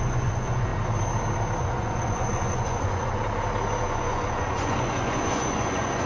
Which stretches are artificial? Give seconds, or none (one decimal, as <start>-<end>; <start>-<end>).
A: 0.0-0.7; 1.6-3.2; 3.8-6.1